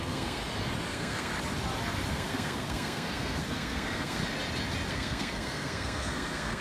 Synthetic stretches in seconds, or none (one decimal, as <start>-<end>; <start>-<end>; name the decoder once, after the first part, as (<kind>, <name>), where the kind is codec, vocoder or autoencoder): 0.0-0.4 (codec, SNAC); 0.9-1.3; 2.1-4.2; 4.9-6.6